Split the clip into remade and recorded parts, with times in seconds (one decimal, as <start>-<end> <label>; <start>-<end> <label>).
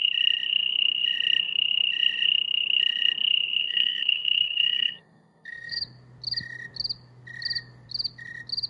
0.0-3.6 recorded; 3.6-5.8 remade; 5.8-8.7 recorded